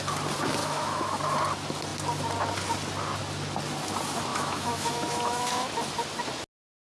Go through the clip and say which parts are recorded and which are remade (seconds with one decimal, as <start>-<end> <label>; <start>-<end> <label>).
0.0-0.6 recorded; 0.6-1.2 remade; 1.2-4.3 recorded; 4.3-5.7 remade; 5.7-6.8 recorded